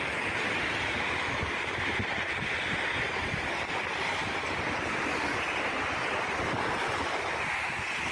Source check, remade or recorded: recorded